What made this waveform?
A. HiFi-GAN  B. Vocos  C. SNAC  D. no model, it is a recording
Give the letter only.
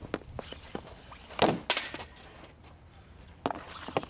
D